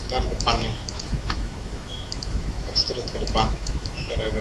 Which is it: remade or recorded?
remade